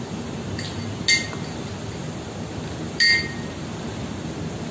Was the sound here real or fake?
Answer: real